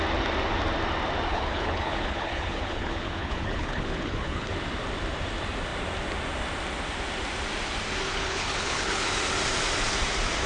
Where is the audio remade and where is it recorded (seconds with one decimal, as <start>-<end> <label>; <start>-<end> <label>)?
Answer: 0.0-1.3 recorded; 1.3-4.5 remade; 4.5-8.1 recorded; 8.1-9.1 remade; 9.1-10.5 recorded